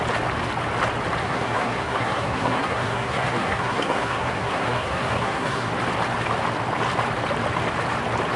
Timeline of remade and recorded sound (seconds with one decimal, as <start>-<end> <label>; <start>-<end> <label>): 0.0-1.2 recorded; 1.2-5.7 remade; 5.7-8.4 recorded